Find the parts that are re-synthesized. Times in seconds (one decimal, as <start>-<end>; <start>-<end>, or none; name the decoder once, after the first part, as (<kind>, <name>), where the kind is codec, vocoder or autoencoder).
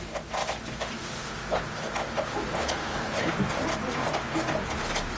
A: 2.6-3.3 (codec, HILCodec)